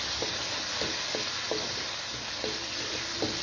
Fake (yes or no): no